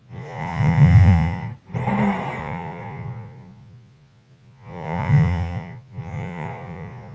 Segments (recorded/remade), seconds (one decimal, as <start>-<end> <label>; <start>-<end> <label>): 0.0-1.5 remade; 1.5-2.4 recorded; 2.4-7.1 remade